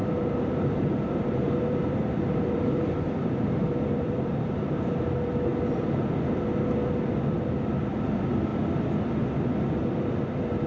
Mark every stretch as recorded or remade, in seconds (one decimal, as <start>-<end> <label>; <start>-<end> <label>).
0.0-4.7 remade; 4.7-10.7 recorded